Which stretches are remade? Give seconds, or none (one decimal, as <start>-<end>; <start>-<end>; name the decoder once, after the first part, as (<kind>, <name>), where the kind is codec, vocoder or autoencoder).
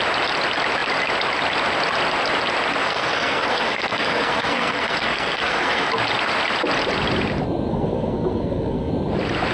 2.8-5.9 (codec, SNAC); 7.7-8.9